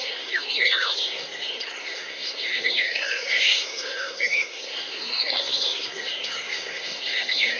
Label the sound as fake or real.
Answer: fake